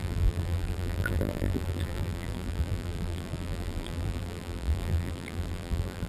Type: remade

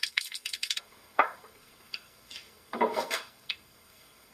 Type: remade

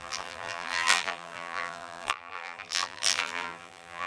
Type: remade